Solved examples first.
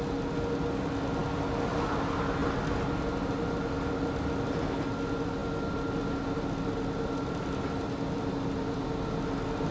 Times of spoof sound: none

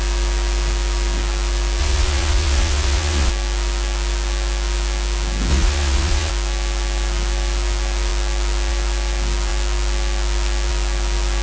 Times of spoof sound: 1.8-3.3 (vocoder, Vocos); 5.5-6.3

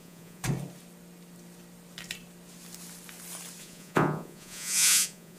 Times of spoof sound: 0.0-0.4 (vocoder, Vocos); 3.6-5.4